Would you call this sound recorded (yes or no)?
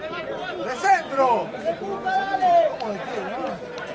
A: no